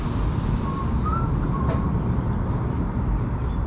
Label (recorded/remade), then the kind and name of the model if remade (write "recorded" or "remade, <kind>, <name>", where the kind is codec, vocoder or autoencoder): recorded